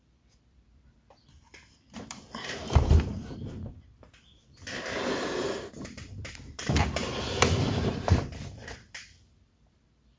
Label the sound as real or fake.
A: fake